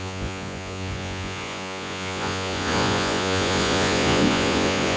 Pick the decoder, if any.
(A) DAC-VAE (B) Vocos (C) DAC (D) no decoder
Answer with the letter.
B